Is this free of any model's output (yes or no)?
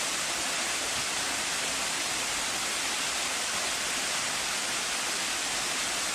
yes